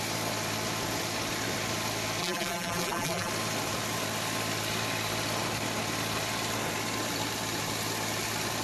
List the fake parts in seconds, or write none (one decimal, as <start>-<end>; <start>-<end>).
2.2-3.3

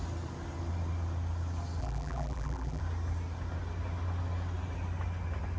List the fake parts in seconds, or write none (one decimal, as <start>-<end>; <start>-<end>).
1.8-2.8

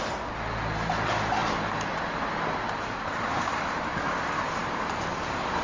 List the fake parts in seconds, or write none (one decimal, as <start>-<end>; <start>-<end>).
none